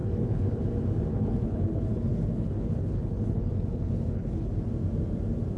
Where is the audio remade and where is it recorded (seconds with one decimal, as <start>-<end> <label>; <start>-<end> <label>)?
0.0-0.6 remade; 0.6-1.1 recorded; 1.1-4.5 remade; 4.5-5.6 recorded